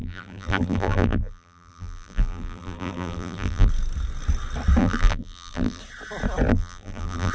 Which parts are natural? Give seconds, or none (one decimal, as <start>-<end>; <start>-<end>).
3.7-4.8; 5.8-6.5

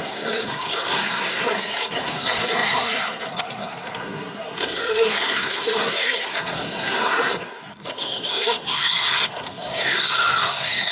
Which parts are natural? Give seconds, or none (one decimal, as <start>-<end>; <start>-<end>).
none